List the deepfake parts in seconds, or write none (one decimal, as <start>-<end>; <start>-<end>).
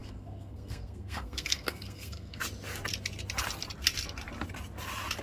0.0-2.4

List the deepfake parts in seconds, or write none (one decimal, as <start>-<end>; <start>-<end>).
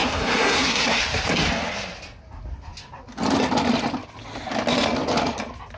0.0-1.0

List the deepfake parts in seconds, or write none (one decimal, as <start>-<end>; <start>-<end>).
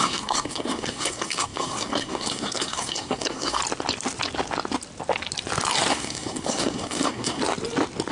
0.0-3.6; 5.9-7.4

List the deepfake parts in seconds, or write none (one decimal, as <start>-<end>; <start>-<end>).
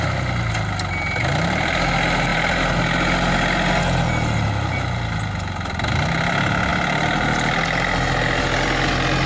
none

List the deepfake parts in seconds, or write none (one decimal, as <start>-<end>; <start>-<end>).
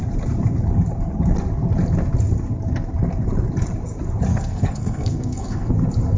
4.3-5.7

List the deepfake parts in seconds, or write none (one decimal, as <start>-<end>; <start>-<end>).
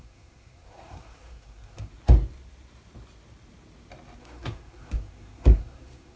0.0-1.9; 4.2-6.2